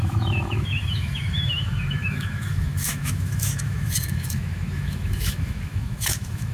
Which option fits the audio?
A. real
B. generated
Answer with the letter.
B